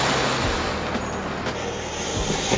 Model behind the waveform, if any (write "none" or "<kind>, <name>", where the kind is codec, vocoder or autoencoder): none